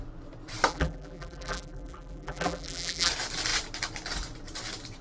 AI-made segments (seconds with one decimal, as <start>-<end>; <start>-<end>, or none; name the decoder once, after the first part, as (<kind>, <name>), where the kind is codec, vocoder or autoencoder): 0.7-3.1 (vocoder, BigVGAN v2)